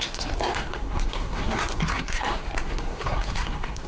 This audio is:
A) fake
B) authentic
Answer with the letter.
A